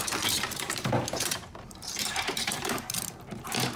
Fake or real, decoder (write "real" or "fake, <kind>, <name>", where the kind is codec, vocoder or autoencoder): fake, vocoder, BigVGAN v2